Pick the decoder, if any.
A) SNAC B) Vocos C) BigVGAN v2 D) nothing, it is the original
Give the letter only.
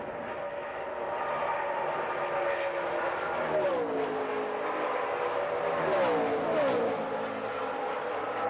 D